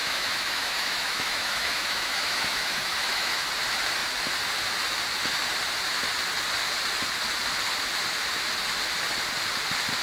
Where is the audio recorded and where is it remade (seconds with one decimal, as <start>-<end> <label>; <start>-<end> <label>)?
0.0-3.4 remade; 3.4-10.0 recorded